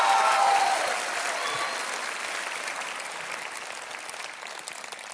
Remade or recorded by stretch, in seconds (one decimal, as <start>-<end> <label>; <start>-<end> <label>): 0.0-5.1 recorded